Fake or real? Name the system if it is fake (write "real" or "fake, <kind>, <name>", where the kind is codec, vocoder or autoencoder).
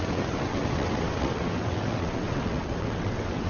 fake, vocoder, WaveNeXt